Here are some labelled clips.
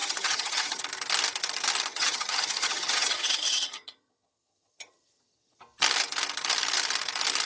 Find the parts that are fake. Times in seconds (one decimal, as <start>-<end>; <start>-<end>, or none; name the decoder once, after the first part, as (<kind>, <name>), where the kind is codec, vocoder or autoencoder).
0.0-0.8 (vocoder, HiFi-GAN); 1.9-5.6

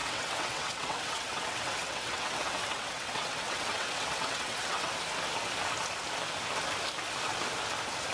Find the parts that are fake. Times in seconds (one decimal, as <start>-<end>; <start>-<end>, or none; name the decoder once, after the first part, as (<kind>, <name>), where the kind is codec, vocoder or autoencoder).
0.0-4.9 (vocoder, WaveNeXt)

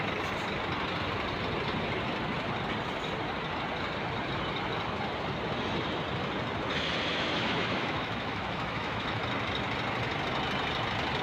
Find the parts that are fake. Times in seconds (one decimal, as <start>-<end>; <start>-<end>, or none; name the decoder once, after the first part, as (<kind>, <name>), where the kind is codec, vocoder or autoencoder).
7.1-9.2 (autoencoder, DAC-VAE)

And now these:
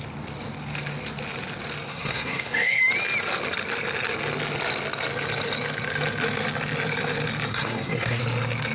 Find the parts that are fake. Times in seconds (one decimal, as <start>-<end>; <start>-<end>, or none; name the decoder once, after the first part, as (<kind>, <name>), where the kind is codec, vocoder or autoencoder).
1.9-2.8 (codec, SNAC); 7.5-8.2

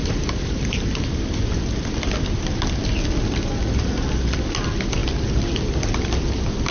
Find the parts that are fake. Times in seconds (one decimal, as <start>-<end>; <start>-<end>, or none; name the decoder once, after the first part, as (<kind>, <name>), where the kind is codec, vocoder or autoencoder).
0.0-1.2 (vocoder, BigVGAN v2)